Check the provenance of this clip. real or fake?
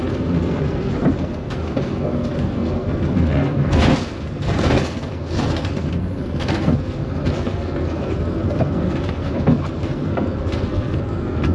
fake